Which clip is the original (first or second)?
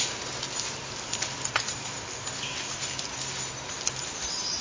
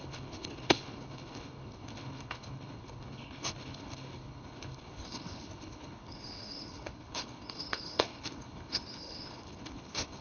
first